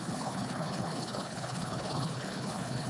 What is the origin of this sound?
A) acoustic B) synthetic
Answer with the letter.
B